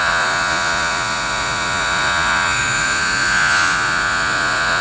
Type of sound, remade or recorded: remade